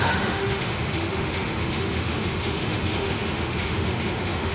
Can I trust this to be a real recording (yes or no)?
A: no